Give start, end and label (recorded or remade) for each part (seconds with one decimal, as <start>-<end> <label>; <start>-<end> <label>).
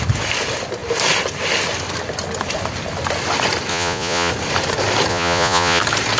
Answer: 0.0-3.7 recorded; 3.7-4.3 remade; 4.3-5.1 recorded; 5.1-5.8 remade; 5.8-6.2 recorded